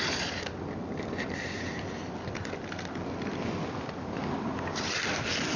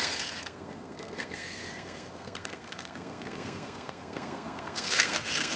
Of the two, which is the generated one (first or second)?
second